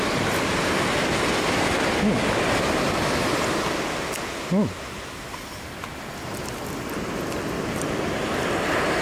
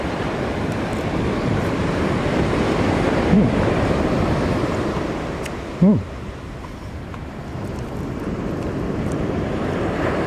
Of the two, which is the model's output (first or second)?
second